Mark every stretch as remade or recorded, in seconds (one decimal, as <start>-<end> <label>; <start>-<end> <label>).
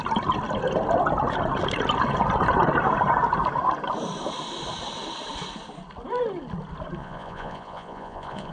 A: 0.0-7.0 recorded; 7.0-8.5 remade